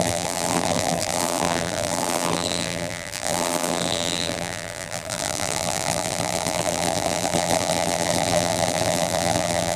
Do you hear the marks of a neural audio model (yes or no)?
yes